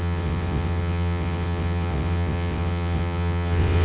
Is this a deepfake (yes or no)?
yes